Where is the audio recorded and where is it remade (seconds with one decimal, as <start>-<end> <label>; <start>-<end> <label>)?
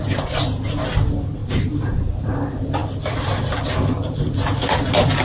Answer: 0.0-1.4 recorded; 1.4-2.3 remade; 2.3-5.2 recorded